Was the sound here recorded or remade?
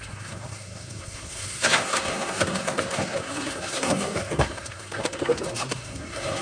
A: remade